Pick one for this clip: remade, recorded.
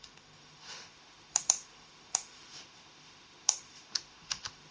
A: remade